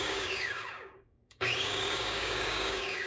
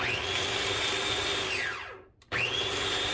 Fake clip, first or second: first